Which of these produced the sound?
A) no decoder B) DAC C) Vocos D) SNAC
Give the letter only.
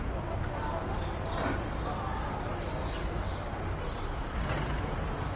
A